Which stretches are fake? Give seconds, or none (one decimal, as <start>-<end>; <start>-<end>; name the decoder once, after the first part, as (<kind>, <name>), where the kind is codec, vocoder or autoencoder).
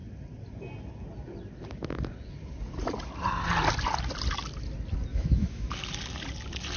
5.1-5.7 (autoencoder, DAC-VAE)